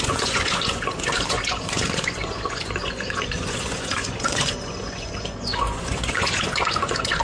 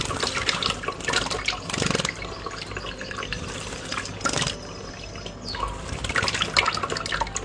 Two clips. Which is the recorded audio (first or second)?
second